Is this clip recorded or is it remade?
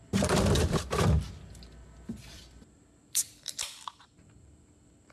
remade